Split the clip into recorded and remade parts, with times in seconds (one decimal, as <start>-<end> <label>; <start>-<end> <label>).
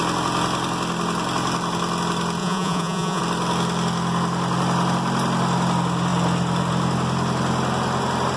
0.0-2.4 recorded; 2.4-3.2 remade; 3.2-8.4 recorded